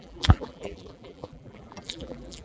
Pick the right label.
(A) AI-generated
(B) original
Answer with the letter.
A